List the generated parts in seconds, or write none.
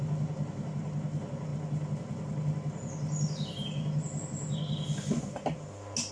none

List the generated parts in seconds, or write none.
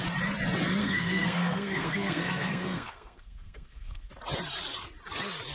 0.8-4.1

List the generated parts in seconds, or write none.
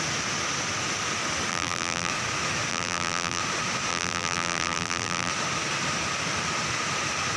1.5-2.1; 2.7-3.4; 3.9-5.3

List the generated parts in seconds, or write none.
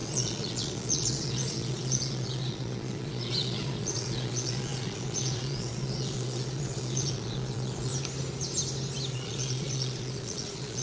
0.0-7.9; 9.1-10.8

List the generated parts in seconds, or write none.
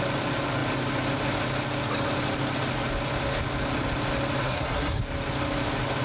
4.4-5.0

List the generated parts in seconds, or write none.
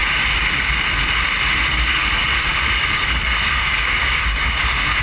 1.7-5.0